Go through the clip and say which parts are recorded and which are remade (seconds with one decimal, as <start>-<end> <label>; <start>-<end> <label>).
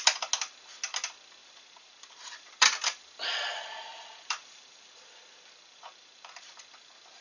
0.0-1.4 recorded; 1.4-3.0 remade; 3.0-3.9 recorded; 3.9-6.6 remade; 6.6-7.2 recorded